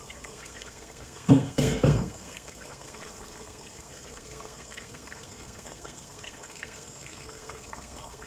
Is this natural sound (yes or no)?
no